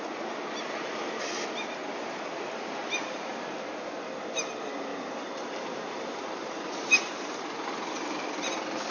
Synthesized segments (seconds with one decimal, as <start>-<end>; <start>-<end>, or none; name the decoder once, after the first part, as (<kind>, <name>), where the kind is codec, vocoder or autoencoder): 2.8-3.3 (vocoder, BigVGAN v2); 4.9-7.4